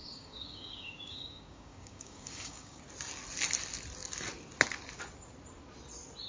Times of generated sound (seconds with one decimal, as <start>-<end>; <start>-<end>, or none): 0.0-2.8